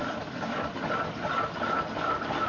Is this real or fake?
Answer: real